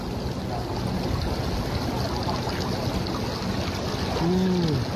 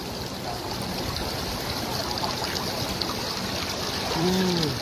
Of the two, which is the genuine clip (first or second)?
first